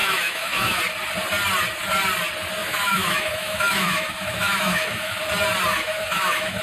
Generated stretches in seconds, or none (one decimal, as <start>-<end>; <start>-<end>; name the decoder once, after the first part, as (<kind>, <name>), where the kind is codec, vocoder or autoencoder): 0.0-0.8 (autoencoder, DAC-VAE); 2.6-5.2; 5.7-6.6